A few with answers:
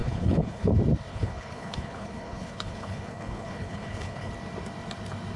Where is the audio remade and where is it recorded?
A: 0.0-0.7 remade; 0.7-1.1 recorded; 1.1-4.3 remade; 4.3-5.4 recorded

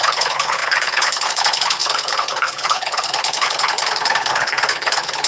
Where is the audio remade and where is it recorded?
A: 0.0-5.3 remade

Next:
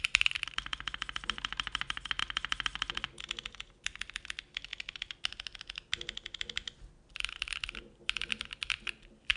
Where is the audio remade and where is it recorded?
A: 0.0-9.4 recorded